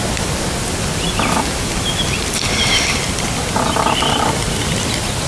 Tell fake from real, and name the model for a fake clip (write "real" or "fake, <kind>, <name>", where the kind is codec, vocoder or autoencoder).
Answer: fake, vocoder, BigVGAN v2